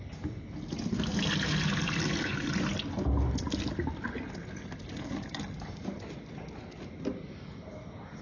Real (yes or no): yes